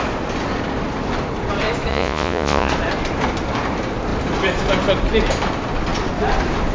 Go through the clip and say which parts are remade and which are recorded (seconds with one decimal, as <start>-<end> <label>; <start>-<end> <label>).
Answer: 0.0-1.9 recorded; 1.9-2.7 remade; 2.7-6.7 recorded